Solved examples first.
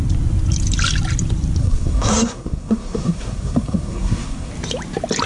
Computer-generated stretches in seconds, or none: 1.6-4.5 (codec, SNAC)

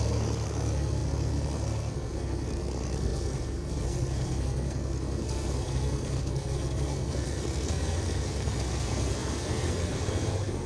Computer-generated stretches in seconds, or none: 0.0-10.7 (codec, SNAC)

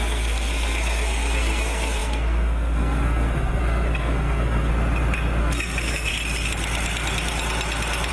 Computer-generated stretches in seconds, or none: 0.0-4.7 (codec, SNAC); 5.4-6.1

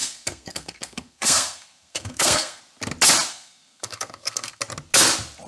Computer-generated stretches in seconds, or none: 0.0-2.6 (codec, SNAC); 3.3-4.6

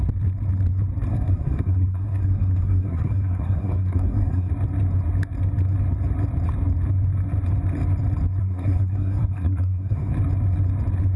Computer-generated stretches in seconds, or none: 1.1-4.5 (codec, SNAC); 8.4-10.1

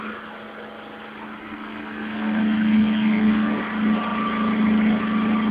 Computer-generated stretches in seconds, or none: 1.4-3.6 (codec, SNAC)

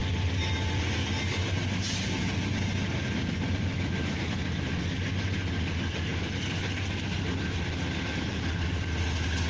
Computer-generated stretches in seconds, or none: none